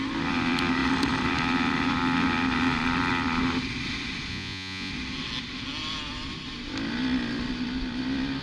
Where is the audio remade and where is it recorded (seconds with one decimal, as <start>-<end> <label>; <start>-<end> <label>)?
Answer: 0.0-4.3 recorded; 4.3-4.9 remade; 4.9-8.4 recorded